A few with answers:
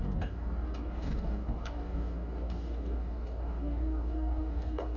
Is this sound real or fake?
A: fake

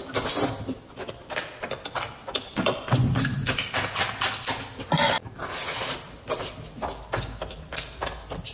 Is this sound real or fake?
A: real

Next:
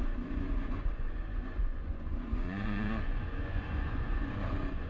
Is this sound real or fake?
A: fake